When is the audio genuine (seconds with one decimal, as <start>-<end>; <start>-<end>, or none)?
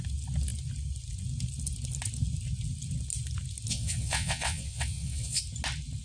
0.0-3.7; 5.4-6.0